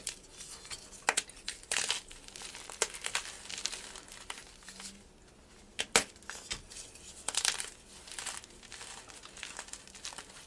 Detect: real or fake real